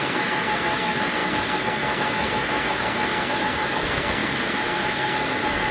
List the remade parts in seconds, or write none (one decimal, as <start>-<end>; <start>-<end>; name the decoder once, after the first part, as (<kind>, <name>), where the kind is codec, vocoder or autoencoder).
0.0-5.7 (codec, SNAC)